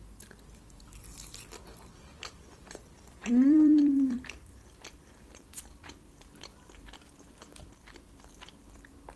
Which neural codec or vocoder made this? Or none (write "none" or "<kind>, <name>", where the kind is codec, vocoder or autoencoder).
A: vocoder, BigVGAN v2